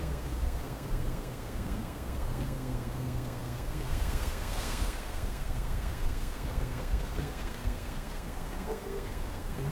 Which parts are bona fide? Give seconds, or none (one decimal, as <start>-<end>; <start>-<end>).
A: none